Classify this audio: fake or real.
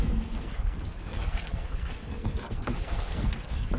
fake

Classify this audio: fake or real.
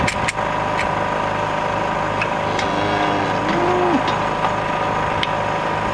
real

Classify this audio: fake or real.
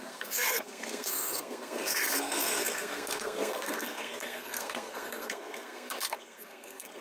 fake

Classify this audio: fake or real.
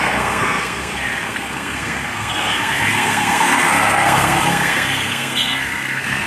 fake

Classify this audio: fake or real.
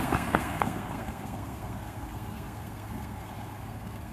fake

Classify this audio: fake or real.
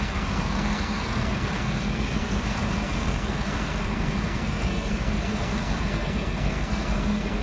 fake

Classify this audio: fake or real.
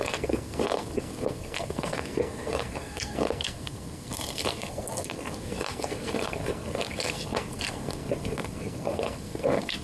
fake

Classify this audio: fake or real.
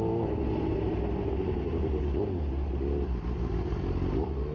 real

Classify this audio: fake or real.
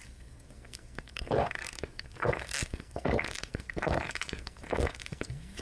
fake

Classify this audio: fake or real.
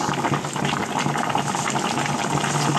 real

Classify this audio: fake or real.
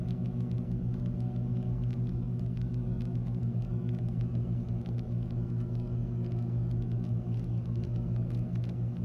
fake